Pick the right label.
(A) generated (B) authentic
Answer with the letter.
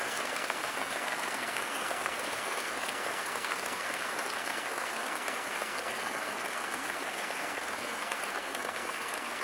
A